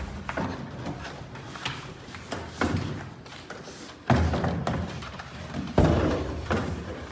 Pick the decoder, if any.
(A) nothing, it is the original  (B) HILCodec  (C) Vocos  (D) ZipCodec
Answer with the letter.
A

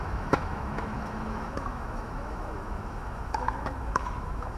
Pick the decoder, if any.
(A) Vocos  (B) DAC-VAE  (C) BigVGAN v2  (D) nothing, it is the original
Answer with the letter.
B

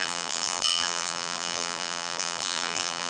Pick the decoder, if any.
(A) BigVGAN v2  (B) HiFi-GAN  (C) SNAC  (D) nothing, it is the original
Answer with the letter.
A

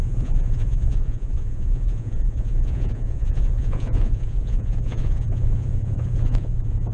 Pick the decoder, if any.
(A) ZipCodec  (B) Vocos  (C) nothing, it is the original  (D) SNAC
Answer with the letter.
B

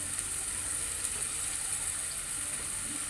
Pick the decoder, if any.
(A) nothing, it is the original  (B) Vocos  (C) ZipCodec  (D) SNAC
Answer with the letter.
A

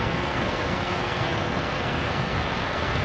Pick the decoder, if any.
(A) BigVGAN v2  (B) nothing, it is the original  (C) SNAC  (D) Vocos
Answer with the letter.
C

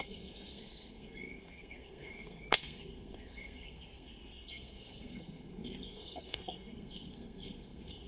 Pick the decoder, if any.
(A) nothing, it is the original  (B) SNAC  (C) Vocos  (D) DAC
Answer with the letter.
B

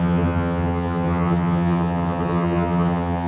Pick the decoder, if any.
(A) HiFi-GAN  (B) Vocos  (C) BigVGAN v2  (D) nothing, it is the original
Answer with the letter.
A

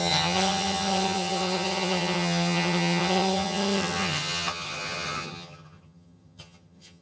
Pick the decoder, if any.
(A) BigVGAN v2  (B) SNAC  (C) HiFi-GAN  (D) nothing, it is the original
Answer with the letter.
C